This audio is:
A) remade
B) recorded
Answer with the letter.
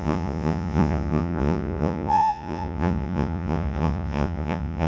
A